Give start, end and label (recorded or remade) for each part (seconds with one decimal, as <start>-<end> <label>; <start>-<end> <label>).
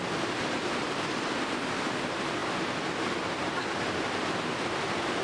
0.0-5.2 recorded